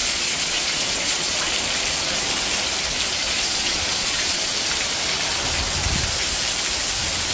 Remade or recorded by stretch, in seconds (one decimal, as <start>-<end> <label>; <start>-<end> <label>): 0.0-1.5 remade; 1.5-3.2 recorded; 3.2-4.5 remade; 4.5-7.3 recorded